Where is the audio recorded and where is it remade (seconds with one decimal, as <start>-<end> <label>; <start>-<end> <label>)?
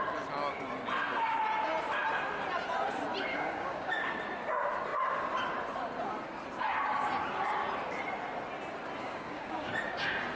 0.0-3.3 recorded; 3.3-4.1 remade; 4.1-9.0 recorded; 9.0-9.7 remade; 9.7-10.4 recorded